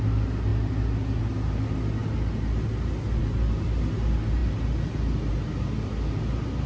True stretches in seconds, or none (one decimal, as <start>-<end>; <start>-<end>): 0.0-6.7